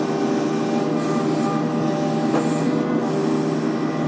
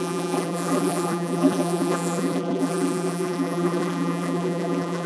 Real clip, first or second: first